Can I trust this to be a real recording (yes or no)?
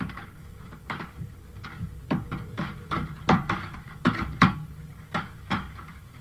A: no